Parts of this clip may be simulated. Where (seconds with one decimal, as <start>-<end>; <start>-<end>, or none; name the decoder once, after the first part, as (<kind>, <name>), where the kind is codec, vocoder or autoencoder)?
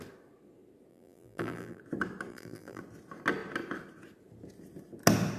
0.9-1.8 (vocoder, BigVGAN v2); 2.3-2.8